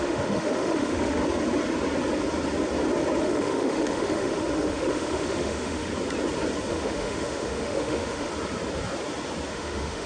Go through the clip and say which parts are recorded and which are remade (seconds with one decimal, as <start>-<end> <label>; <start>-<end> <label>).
0.0-1.2 remade; 1.2-3.2 recorded; 3.2-5.9 remade; 5.9-6.7 recorded; 6.7-8.3 remade; 8.3-9.5 recorded; 9.5-10.1 remade